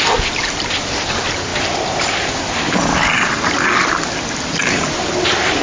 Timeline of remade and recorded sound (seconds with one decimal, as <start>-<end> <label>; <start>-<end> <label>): 0.0-5.6 recorded